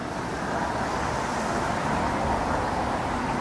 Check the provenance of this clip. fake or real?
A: real